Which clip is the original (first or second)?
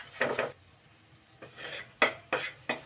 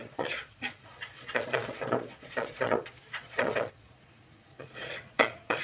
first